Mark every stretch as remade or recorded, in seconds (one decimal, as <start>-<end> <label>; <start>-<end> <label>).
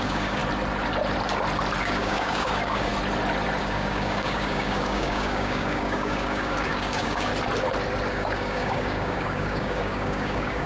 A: 0.0-0.4 remade; 0.4-1.8 recorded; 1.8-2.9 remade; 2.9-3.6 recorded; 3.6-7.3 remade; 7.3-8.1 recorded; 8.1-10.7 remade